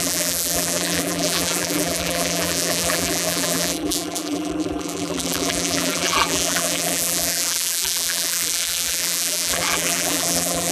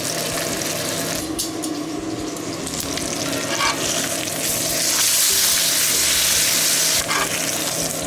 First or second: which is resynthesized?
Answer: first